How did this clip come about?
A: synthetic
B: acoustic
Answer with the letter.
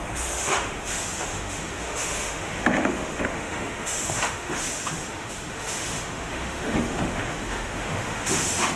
A